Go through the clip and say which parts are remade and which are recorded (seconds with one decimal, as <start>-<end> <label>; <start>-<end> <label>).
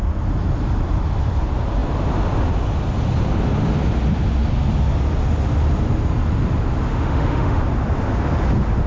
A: 0.0-6.9 recorded; 6.9-7.6 remade; 7.6-8.9 recorded